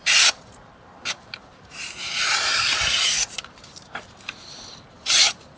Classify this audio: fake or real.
fake